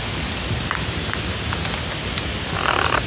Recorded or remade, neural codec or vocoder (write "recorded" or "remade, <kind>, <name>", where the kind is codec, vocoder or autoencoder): recorded